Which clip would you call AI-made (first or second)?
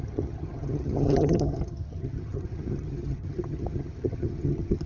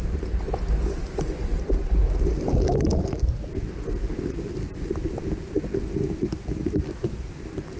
first